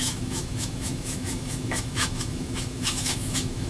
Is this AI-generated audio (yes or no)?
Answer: yes